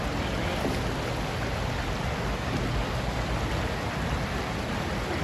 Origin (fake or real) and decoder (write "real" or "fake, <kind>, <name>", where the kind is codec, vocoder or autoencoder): real